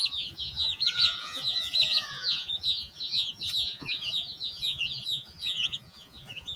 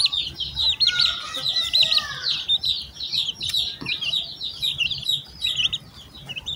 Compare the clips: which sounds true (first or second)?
second